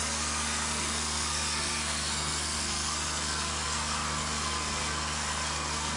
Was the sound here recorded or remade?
remade